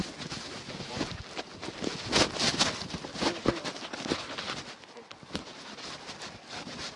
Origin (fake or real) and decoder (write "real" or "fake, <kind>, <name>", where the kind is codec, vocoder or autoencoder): real